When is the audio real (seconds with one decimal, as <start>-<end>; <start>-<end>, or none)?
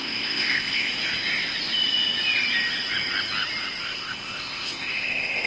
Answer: 0.9-3.8